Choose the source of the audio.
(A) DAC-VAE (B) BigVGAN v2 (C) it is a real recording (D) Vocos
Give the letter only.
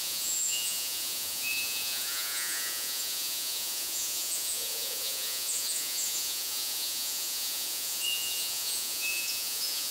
D